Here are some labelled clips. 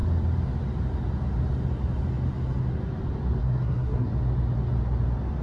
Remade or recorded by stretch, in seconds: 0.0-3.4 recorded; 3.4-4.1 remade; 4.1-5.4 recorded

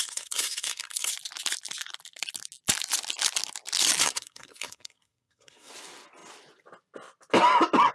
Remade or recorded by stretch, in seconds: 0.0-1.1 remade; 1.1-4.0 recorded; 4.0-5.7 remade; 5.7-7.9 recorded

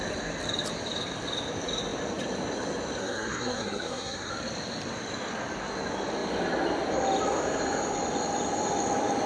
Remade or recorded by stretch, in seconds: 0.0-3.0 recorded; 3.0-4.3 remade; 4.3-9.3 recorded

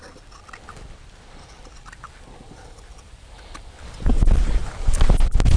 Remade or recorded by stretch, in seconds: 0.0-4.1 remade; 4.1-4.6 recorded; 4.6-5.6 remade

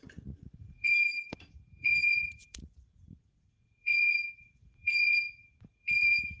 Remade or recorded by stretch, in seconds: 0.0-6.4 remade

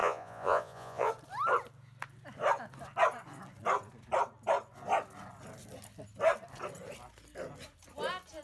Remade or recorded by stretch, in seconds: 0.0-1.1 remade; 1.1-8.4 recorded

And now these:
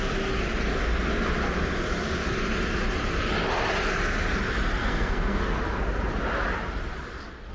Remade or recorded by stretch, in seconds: 0.0-4.8 recorded; 4.8-5.6 remade; 5.6-7.5 recorded

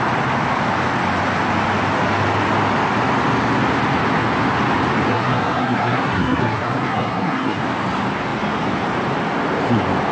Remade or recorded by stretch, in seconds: 0.0-5.1 recorded; 5.1-7.6 remade; 7.6-10.1 recorded